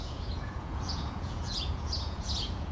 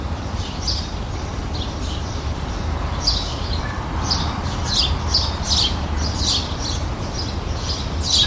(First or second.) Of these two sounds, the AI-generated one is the first